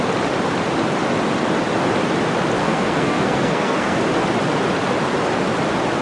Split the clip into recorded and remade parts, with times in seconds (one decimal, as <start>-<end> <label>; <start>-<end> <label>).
0.0-2.6 recorded; 2.6-4.0 remade; 4.0-6.0 recorded